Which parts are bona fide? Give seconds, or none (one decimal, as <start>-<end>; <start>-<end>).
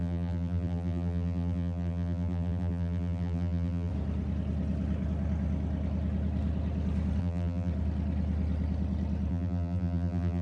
3.9-7.2; 7.7-9.3